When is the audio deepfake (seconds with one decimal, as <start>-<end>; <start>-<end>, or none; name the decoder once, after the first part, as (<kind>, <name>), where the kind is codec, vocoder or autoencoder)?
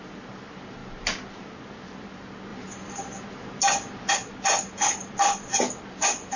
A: none